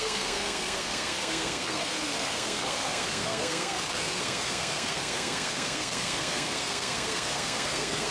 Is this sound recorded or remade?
remade